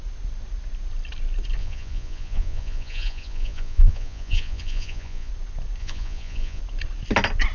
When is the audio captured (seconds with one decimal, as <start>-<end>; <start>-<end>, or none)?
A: 0.0-1.6; 5.3-5.8; 6.6-7.5